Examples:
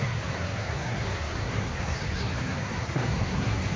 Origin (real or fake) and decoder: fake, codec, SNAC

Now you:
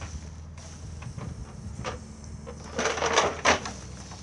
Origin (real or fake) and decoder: real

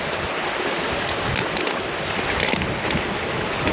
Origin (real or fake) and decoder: real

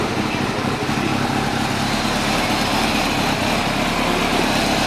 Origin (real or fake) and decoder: real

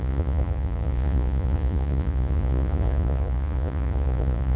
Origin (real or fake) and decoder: fake, vocoder, Vocos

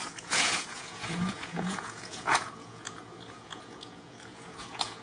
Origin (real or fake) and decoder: fake, vocoder, Vocos